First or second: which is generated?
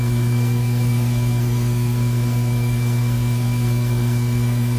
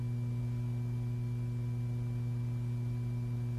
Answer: first